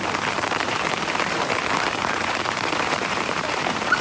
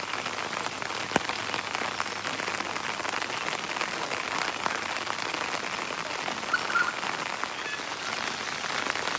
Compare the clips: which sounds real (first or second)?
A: second